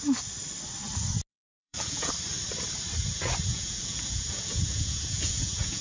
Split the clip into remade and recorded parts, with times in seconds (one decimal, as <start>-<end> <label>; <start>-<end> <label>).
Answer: 0.0-1.3 recorded; 1.3-2.1 remade; 2.1-3.5 recorded; 3.5-5.8 remade